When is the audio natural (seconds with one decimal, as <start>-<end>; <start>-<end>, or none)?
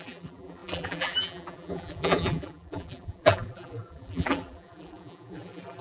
none